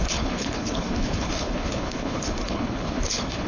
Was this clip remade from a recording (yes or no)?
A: yes